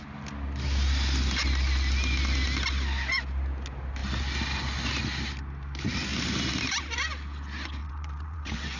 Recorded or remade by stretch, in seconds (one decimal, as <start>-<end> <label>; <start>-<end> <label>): 0.0-7.8 recorded; 7.8-8.8 remade